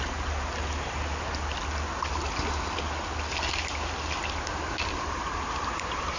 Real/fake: real